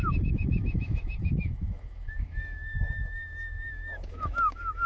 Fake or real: fake